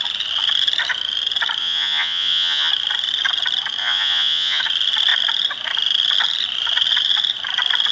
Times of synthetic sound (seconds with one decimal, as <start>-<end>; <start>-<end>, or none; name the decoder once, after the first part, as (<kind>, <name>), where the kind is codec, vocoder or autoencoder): 1.6-2.7 (vocoder, Vocos); 3.8-4.6